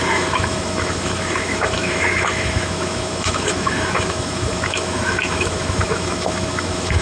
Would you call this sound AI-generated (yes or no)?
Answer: yes